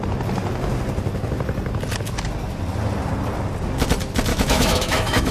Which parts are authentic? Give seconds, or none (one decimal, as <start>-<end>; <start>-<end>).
0.0-4.3

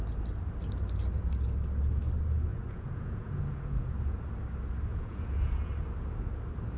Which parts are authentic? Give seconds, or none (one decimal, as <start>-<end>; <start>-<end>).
0.0-2.5; 4.2-4.9; 5.7-6.8

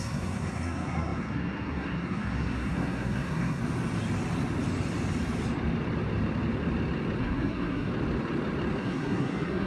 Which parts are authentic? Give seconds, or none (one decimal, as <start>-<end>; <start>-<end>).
3.6-7.2; 7.9-8.8